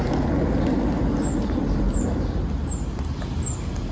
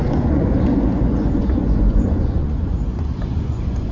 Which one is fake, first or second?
second